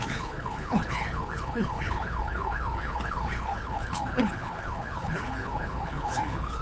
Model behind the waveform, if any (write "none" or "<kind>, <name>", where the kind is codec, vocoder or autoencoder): codec, HILCodec